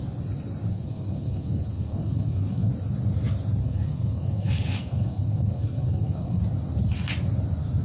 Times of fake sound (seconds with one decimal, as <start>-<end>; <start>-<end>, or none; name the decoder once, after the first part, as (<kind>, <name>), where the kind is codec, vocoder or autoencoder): 0.7-2.7 (codec, SNAC); 3.6-6.4